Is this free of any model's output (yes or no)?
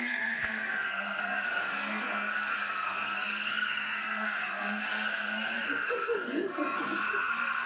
no